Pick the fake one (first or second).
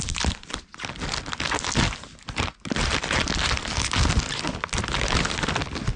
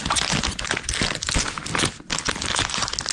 second